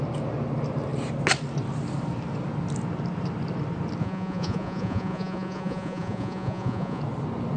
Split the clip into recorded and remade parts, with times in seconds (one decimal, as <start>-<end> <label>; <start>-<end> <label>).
0.0-4.0 recorded; 4.0-7.0 remade; 7.0-7.6 recorded